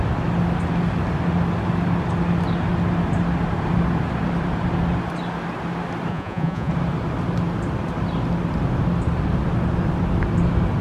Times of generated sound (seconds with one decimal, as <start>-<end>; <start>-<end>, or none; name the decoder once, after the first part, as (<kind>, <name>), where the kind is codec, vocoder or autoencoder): 6.1-6.7 (vocoder, Vocos)